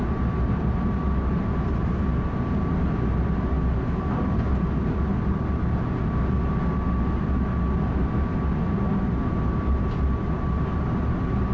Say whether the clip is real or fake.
real